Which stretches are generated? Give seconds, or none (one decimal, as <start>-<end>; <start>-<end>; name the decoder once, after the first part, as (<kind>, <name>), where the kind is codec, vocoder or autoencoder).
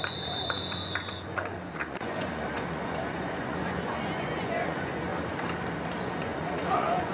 0.0-5.1 (vocoder, Vocos); 6.0-7.1